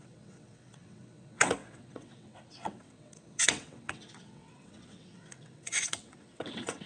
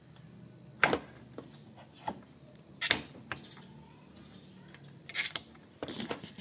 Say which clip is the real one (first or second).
second